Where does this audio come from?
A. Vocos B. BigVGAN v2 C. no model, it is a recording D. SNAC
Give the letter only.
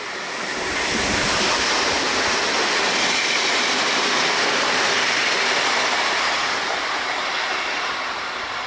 B